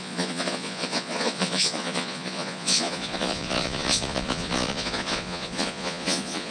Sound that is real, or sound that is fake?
fake